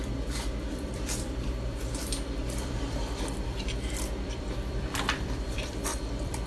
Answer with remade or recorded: remade